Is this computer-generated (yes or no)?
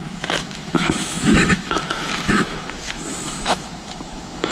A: yes